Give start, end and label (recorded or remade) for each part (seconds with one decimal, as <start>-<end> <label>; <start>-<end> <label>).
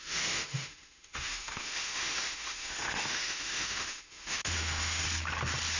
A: 0.0-5.0 remade; 5.0-5.8 recorded